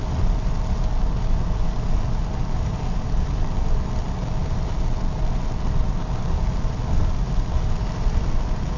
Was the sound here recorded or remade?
recorded